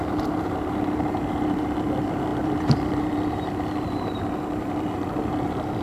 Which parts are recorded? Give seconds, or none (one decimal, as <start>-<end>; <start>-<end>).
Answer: none